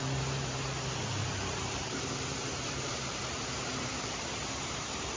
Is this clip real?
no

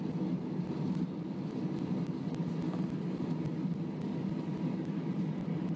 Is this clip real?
yes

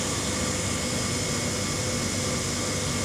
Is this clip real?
yes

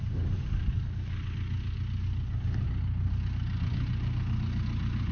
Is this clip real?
yes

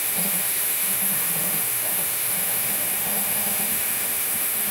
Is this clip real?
no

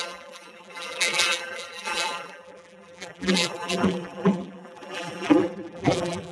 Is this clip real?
no